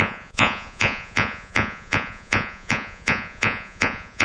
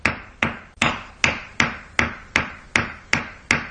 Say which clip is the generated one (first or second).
first